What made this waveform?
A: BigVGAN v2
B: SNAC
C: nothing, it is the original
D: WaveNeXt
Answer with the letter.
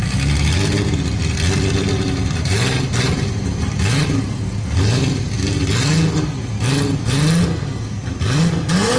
C